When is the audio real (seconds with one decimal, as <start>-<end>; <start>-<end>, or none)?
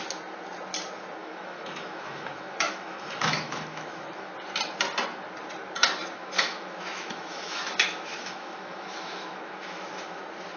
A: 0.0-1.2; 4.3-6.1; 10.2-10.6